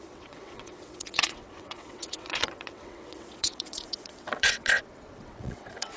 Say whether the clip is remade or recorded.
remade